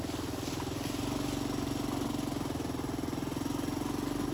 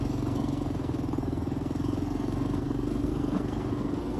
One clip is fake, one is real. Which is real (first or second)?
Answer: first